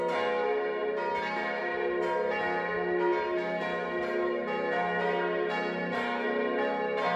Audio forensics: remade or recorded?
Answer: recorded